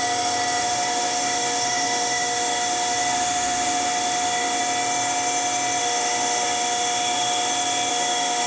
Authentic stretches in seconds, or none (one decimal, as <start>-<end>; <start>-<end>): 0.0-0.6; 4.6-5.8; 7.5-7.9